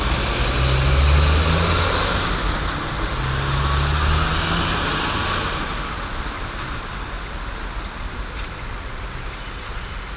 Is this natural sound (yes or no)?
yes